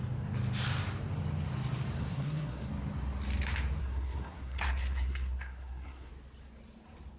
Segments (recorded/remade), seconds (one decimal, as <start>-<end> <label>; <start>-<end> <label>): 0.0-2.0 recorded; 2.0-2.7 remade; 2.7-3.8 recorded; 3.8-6.1 remade; 6.1-7.2 recorded